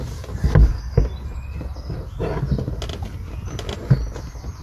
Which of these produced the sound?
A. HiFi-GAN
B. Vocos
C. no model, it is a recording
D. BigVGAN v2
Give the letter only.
C